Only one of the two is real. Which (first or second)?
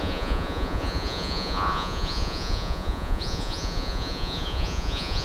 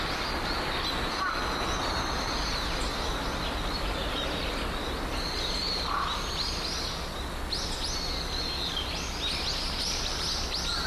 second